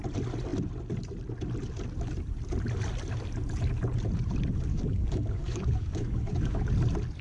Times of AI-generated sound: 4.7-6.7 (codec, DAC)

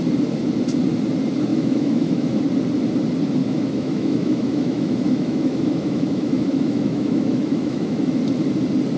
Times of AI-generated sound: 1.5-2.4 (autoencoder, DAC-VAE); 3.4-8.2

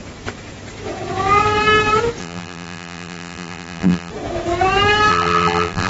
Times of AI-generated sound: 2.2-4.1 (vocoder, BigVGAN v2); 5.1-5.9

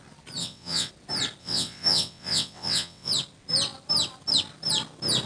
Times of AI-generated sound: 0.4-0.9 (vocoder, WaveNeXt); 1.4-3.1

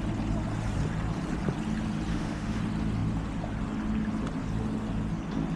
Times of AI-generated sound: 2.1-2.6 (autoencoder, DAC-VAE)

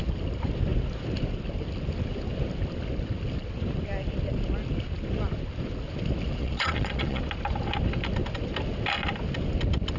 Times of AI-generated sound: 6.4-7.2 (vocoder, Vocos)

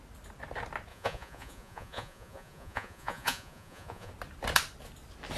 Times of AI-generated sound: 0.9-4.1 (vocoder, Vocos)